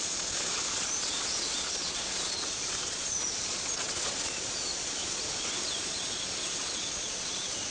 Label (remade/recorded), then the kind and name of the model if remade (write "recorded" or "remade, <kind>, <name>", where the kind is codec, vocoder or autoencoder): remade, vocoder, Vocos